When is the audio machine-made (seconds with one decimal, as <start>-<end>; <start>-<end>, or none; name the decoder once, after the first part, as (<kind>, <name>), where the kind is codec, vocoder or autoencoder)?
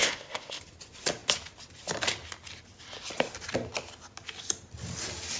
0.0-0.6 (codec, ZipCodec)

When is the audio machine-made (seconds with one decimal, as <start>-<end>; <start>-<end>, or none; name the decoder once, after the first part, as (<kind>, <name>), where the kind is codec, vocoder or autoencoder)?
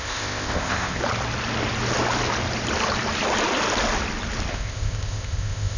0.0-1.0 (codec, ZipCodec); 4.5-5.8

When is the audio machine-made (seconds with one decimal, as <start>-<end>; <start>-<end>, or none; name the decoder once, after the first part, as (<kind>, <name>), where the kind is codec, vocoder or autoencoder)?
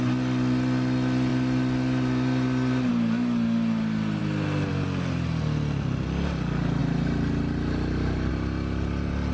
none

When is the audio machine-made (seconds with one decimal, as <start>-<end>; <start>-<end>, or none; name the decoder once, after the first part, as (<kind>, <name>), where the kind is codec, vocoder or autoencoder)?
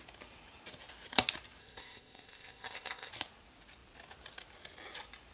1.6-3.1 (codec, ZipCodec)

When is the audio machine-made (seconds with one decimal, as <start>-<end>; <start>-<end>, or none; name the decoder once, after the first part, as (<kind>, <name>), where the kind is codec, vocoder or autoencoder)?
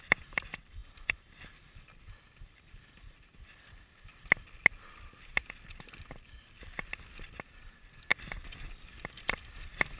none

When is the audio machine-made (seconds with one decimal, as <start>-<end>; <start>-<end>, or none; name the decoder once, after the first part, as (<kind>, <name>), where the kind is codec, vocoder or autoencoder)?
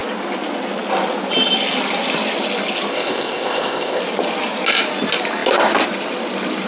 2.9-4.0 (codec, ZipCodec)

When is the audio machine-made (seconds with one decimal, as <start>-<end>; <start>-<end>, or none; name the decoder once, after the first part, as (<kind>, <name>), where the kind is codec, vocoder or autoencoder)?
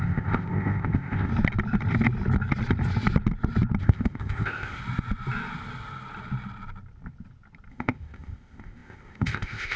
0.0-1.3 (codec, ZipCodec); 3.8-4.8; 7.7-9.8